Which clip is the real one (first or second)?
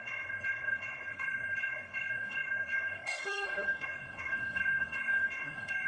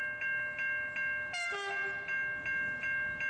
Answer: second